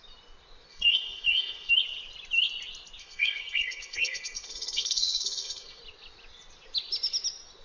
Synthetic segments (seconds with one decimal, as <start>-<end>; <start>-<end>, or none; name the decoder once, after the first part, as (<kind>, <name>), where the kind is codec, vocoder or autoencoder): 0.7-1.7 (codec, SNAC); 3.0-5.8